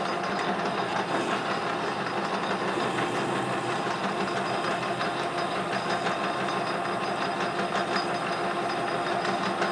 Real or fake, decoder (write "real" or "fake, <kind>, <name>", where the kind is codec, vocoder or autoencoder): real